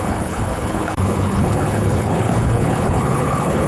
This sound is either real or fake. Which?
fake